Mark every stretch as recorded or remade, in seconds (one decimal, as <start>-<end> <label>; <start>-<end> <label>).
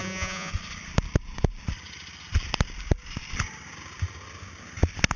0.0-0.5 remade; 0.5-5.2 recorded